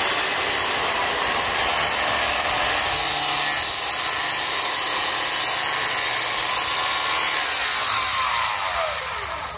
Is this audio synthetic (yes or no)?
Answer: no